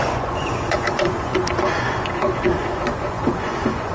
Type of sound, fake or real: fake